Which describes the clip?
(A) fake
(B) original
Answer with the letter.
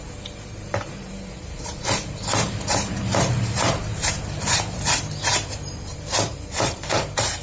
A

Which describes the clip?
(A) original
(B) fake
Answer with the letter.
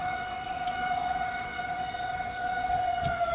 B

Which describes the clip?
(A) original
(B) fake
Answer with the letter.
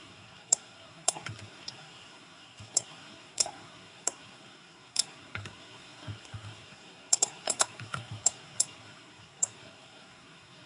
B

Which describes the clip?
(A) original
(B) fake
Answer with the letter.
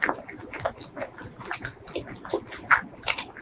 A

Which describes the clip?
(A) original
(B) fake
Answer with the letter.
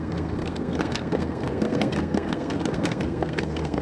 B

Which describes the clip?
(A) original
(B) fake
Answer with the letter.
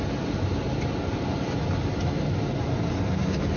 A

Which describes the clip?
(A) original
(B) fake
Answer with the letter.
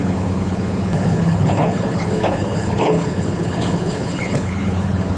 B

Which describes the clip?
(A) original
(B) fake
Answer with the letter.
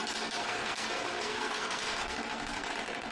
B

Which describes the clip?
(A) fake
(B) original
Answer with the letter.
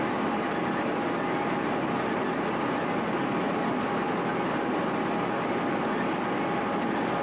B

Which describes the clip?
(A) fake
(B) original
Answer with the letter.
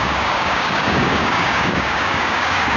A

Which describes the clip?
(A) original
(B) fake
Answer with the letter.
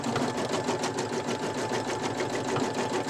A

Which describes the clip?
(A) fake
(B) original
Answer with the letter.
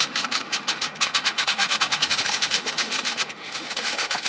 A